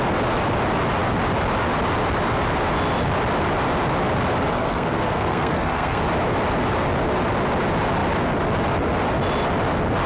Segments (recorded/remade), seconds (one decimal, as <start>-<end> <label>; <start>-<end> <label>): 0.0-4.5 recorded; 4.5-6.0 remade; 6.0-10.1 recorded